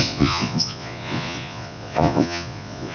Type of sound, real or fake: fake